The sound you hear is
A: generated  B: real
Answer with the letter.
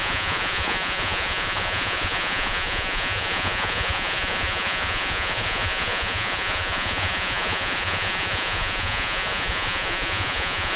A